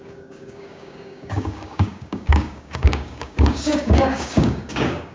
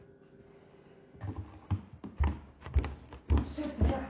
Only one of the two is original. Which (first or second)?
second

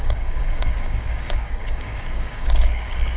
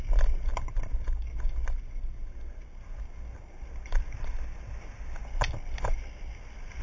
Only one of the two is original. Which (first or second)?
second